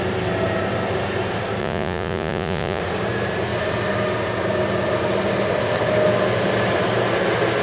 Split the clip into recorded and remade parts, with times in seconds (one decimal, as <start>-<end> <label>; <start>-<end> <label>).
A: 0.0-1.6 recorded; 1.6-2.8 remade; 2.8-7.6 recorded